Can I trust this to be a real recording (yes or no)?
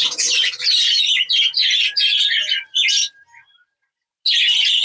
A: yes